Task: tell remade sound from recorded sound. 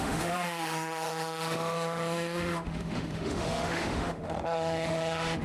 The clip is remade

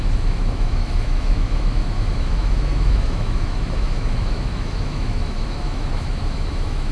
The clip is remade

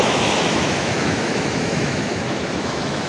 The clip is remade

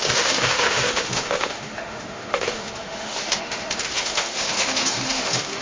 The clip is remade